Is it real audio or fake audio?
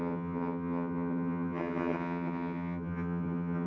fake